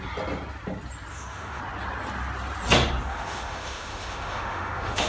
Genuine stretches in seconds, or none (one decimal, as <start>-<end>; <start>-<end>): 0.0-1.1; 1.6-3.1